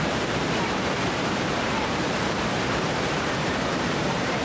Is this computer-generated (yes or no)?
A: yes